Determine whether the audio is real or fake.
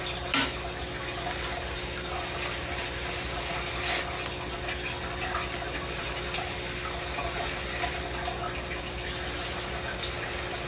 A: real